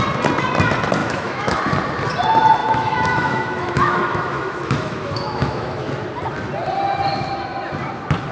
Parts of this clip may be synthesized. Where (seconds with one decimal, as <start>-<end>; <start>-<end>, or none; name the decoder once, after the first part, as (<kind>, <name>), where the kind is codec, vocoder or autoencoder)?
1.0-1.6 (autoencoder, DAC-VAE); 2.6-5.9